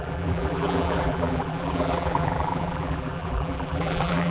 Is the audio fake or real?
fake